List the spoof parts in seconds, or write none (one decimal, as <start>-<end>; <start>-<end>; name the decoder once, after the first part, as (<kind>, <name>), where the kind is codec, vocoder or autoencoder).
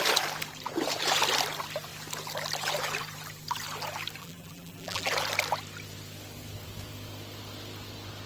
4.2-5.1 (vocoder, BigVGAN v2)